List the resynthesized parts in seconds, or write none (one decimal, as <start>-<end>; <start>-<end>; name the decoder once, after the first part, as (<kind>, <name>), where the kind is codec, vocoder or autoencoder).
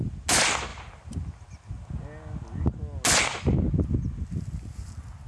none